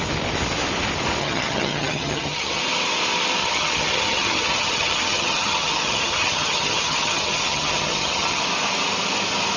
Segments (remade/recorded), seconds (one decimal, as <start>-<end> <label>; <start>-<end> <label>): 0.0-1.2 recorded; 1.2-2.6 remade; 2.6-3.4 recorded; 3.4-8.4 remade; 8.4-9.6 recorded